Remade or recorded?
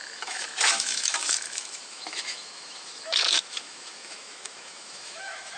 remade